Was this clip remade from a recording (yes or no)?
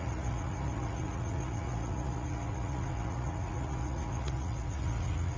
yes